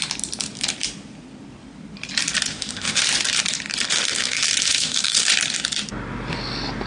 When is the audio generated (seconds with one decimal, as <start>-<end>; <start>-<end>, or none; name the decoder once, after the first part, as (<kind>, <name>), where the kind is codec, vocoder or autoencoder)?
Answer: 2.5-3.0 (autoencoder, DAC-VAE); 3.9-5.2